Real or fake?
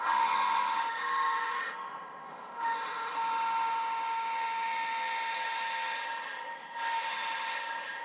fake